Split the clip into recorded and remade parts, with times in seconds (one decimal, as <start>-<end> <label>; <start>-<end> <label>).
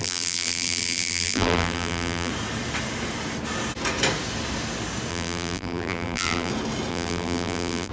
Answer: 0.0-2.3 remade; 2.3-5.1 recorded; 5.1-6.5 remade; 6.5-6.9 recorded; 6.9-7.9 remade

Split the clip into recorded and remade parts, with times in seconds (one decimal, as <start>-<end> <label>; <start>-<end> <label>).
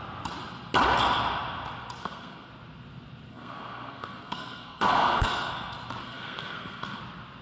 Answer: 0.0-2.0 recorded; 2.0-2.5 remade; 2.5-3.3 recorded; 3.3-5.5 remade; 5.5-6.0 recorded; 6.0-7.0 remade; 7.0-7.4 recorded